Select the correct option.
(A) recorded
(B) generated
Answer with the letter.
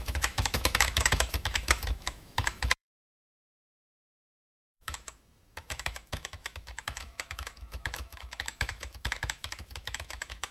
B